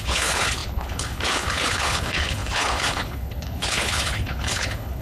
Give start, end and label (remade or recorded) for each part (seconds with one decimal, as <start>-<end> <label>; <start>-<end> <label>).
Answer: 0.0-5.0 remade